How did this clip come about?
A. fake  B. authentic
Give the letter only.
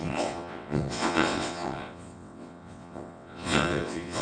A